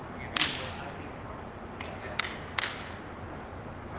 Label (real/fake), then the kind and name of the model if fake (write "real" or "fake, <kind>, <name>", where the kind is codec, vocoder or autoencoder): real